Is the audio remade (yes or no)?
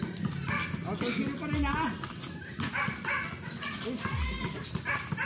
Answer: no